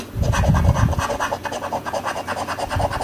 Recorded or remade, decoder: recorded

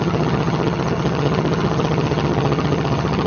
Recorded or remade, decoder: remade, vocoder, HiFi-GAN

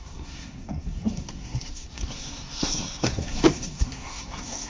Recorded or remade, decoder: remade, codec, SNAC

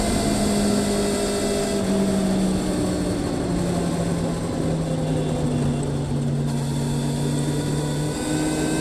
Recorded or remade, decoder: recorded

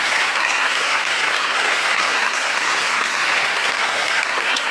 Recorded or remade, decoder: remade, codec, SNAC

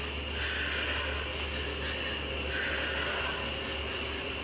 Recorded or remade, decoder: recorded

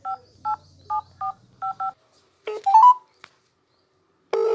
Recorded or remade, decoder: recorded